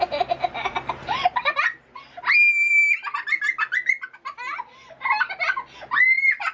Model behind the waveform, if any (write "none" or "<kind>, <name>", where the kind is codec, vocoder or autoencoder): none